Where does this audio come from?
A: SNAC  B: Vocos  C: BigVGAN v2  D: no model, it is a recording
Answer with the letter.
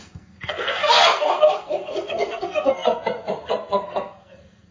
A